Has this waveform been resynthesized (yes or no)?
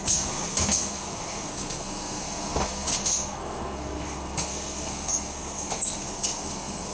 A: yes